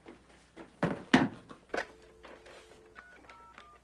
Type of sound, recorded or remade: recorded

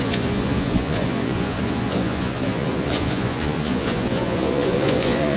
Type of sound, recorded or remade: remade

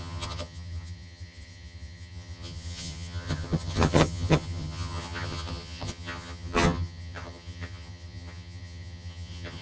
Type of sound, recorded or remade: remade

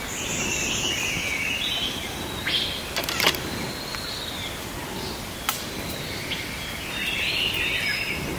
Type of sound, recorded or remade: recorded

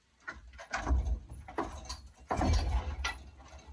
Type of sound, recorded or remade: recorded